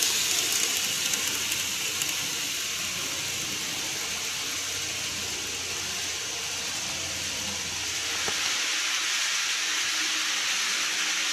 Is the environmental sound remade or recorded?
recorded